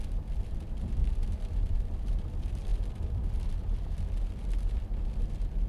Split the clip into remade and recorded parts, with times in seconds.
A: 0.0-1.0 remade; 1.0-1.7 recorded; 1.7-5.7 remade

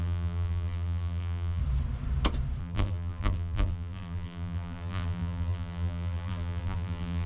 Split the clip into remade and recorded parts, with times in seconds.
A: 0.0-1.6 remade; 1.6-2.6 recorded; 2.6-7.3 remade

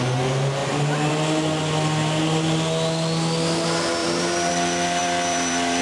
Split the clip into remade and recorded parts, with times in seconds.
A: 0.0-4.0 recorded; 4.0-4.5 remade; 4.5-5.0 recorded; 5.0-5.8 remade

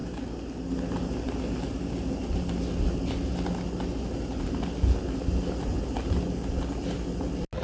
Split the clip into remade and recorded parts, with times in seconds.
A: 0.0-7.6 recorded

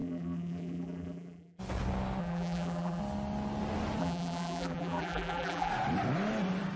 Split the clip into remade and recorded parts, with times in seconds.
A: 0.0-1.6 remade; 1.6-2.2 recorded; 2.2-3.0 remade; 3.0-4.0 recorded; 4.0-5.7 remade; 5.7-6.8 recorded

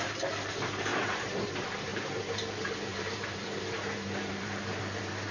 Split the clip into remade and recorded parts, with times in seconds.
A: 0.0-0.9 recorded; 0.9-1.5 remade; 1.5-1.9 recorded; 1.9-5.3 remade

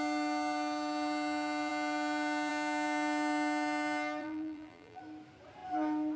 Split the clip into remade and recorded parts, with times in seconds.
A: 0.0-4.2 recorded; 4.2-5.0 remade; 5.0-6.2 recorded